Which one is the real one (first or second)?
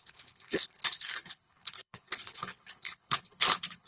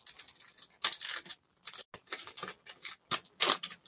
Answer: second